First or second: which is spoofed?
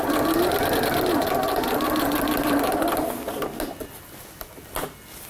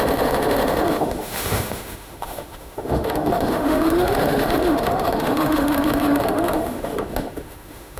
second